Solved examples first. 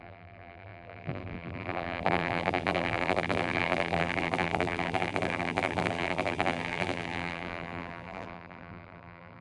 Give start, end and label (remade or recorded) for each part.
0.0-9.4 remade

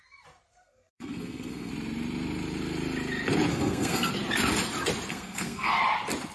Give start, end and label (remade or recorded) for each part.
0.0-0.5 recorded; 0.5-1.7 remade; 1.7-3.5 recorded; 3.5-4.1 remade; 4.1-5.1 recorded; 5.1-5.8 remade; 5.8-6.3 recorded